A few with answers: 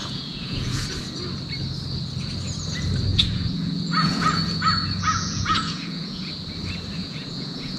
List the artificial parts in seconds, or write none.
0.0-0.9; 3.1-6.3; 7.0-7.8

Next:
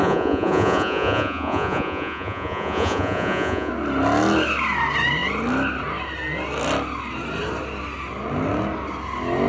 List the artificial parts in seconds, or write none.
0.0-3.7